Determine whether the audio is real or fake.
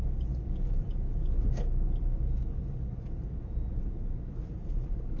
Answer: real